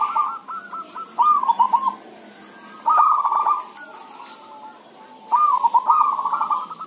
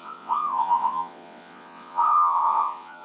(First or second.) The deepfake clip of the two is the second